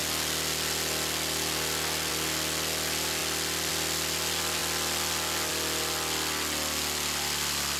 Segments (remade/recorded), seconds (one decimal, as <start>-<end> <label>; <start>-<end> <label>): 0.0-7.8 recorded